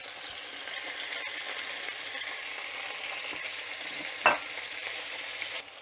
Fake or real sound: real